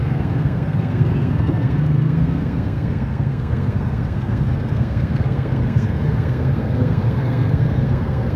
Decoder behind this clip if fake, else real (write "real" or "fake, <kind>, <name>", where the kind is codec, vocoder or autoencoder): fake, codec, SNAC